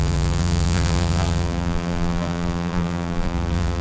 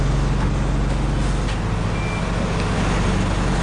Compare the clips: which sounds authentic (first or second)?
second